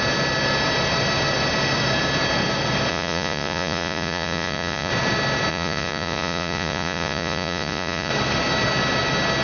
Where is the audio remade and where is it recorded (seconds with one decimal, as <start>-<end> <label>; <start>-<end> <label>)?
0.0-2.9 recorded; 2.9-4.9 remade; 4.9-5.5 recorded; 5.5-8.1 remade; 8.1-9.4 recorded